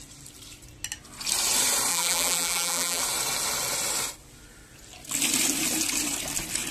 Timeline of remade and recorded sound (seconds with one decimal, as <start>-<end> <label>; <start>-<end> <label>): 0.0-1.9 recorded; 1.9-3.0 remade; 3.0-6.7 recorded